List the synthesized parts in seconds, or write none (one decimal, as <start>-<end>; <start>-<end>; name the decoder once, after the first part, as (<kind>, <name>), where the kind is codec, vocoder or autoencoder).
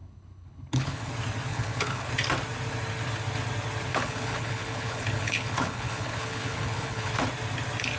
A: 0.0-1.1 (codec, HILCodec); 1.5-2.1; 3.9-7.1